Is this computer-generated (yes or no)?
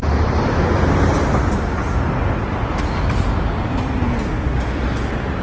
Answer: no